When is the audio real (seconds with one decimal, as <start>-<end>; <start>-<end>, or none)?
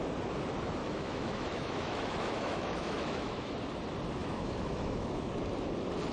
0.0-0.8; 3.5-4.2; 5.3-6.1